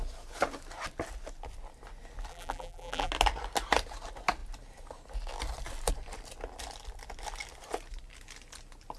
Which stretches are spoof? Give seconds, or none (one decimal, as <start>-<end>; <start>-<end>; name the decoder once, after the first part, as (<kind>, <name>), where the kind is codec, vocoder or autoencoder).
2.3-3.1 (vocoder, BigVGAN v2)